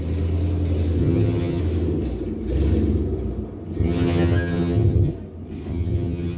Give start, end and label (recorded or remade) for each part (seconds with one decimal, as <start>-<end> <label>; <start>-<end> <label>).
0.0-1.0 recorded; 1.0-1.6 remade; 1.6-3.8 recorded; 3.8-5.1 remade; 5.1-5.7 recorded; 5.7-6.4 remade

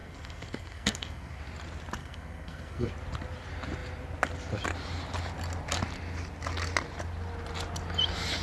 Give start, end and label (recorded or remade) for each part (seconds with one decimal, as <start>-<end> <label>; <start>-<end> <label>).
0.0-1.4 remade; 1.4-2.0 recorded; 2.0-2.9 remade; 2.9-8.4 recorded

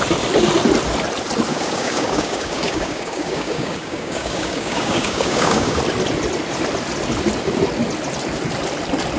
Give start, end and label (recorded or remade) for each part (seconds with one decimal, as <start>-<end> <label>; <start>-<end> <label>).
0.0-1.5 recorded; 1.5-5.8 remade; 5.8-9.2 recorded

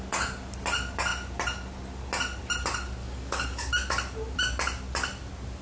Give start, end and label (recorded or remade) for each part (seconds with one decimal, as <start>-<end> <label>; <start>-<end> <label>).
0.0-3.0 recorded; 3.0-3.7 remade; 3.7-5.6 recorded

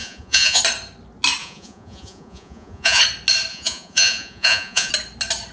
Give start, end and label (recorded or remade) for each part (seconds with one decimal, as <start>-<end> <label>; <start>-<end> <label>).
0.0-0.6 remade; 0.6-1.4 recorded; 1.4-3.0 remade; 3.0-3.5 recorded; 3.5-4.9 remade; 4.9-5.5 recorded

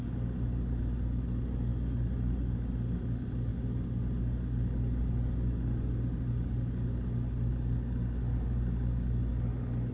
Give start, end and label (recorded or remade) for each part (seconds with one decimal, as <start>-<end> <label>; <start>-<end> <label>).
0.0-9.9 recorded

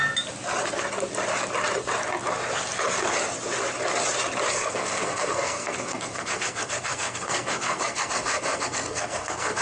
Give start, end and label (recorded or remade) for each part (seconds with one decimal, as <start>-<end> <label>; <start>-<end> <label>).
0.0-4.5 recorded; 4.5-9.6 remade

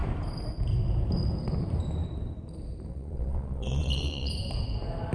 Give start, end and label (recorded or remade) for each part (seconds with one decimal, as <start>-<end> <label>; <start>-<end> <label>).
0.0-2.9 recorded; 2.9-4.3 remade; 4.3-5.1 recorded